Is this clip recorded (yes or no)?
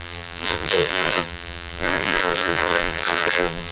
no